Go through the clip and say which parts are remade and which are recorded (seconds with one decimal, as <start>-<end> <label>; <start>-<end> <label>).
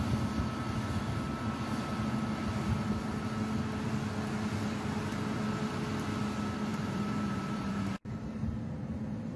0.0-6.7 recorded; 6.7-9.4 remade